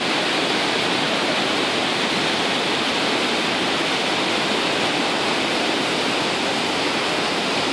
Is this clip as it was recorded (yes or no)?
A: no